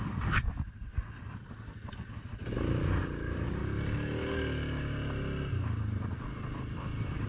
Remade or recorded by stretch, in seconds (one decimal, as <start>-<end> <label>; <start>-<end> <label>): 0.0-0.9 remade; 0.9-2.1 recorded; 2.1-3.6 remade; 3.6-5.9 recorded; 5.9-7.3 remade